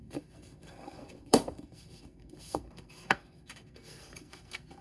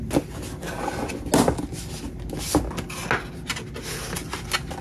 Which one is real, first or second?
second